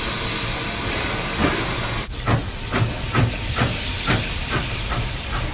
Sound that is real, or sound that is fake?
real